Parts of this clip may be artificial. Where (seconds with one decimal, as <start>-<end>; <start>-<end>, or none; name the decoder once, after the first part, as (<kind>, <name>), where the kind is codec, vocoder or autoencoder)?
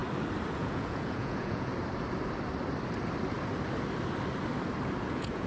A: 0.5-1.7 (vocoder, Vocos); 5.0-5.5